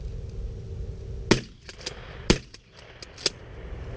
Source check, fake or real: real